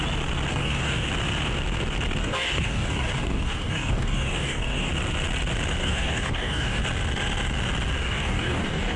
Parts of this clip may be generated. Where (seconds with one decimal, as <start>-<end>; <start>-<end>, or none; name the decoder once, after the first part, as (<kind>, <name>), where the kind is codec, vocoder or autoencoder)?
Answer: 0.5-1.1 (codec, DAC); 2.2-4.9; 5.8-6.8; 8.0-9.0